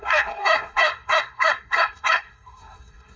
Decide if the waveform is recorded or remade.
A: remade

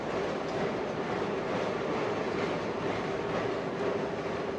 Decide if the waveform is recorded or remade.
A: recorded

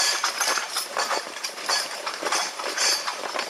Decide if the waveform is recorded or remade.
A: remade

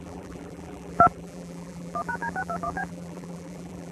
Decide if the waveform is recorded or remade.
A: remade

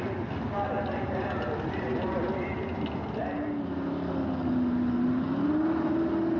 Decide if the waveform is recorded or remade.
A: recorded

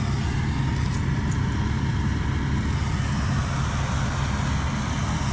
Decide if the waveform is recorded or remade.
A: recorded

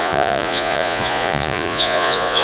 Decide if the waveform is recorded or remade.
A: remade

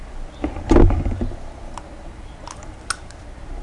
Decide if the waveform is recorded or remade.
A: recorded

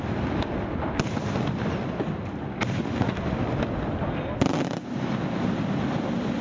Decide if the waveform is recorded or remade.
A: recorded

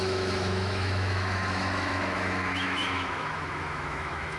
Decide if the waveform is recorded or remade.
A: remade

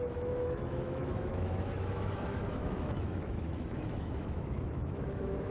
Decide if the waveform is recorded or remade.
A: remade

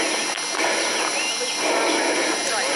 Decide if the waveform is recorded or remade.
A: recorded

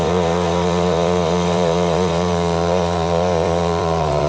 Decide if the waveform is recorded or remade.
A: remade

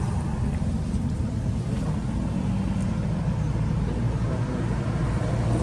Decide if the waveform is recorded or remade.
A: recorded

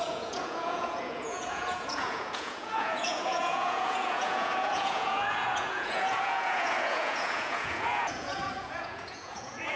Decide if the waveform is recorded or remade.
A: remade